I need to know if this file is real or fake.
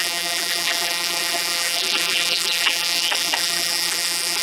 fake